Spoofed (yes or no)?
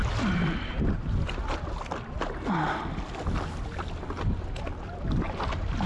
no